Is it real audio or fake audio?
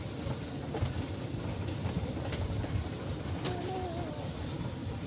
fake